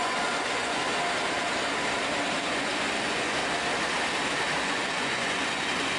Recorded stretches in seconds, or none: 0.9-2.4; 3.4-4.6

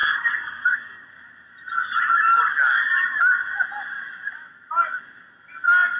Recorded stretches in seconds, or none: 0.7-2.7; 3.6-6.0

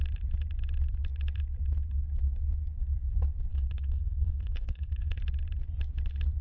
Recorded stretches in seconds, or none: 0.0-3.5; 5.2-6.4

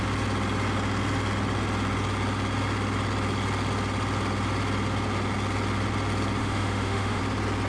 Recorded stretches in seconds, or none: 0.0-6.4; 7.2-7.7

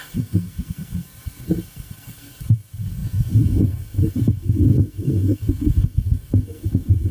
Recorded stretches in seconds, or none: none